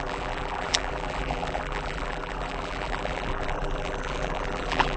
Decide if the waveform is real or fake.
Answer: fake